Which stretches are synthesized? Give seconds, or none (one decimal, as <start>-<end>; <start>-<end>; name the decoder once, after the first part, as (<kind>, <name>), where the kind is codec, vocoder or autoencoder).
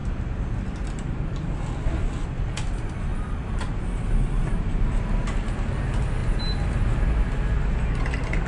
3.1-4.9 (vocoder, BigVGAN v2)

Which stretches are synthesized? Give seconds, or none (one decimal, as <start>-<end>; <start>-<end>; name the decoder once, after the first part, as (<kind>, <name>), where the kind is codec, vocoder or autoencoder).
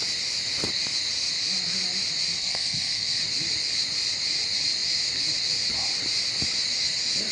2.4-3.2 (codec, SNAC)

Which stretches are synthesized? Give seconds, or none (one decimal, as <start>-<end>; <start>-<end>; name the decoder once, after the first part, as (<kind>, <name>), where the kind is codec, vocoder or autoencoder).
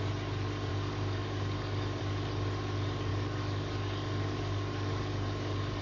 0.7-2.0 (codec, DAC); 3.1-5.8